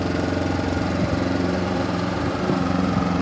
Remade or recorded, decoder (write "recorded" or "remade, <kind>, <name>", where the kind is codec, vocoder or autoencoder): remade, vocoder, BigVGAN v2